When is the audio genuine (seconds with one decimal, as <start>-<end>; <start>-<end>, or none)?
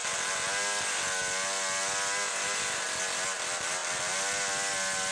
0.0-5.1